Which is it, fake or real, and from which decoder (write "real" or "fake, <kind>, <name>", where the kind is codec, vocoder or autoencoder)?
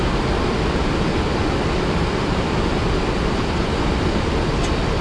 real